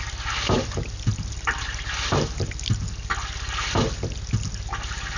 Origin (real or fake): real